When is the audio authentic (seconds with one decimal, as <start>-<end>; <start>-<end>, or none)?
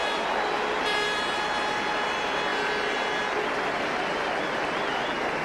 0.0-5.4